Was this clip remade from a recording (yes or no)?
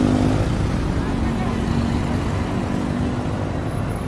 no